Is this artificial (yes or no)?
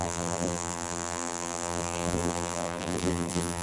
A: yes